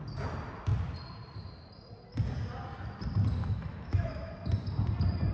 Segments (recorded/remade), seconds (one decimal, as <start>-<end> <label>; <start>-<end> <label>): 0.0-3.4 recorded; 3.4-4.3 remade; 4.3-5.3 recorded